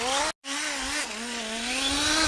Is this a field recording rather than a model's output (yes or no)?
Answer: yes